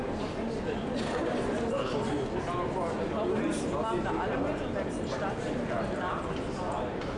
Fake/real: real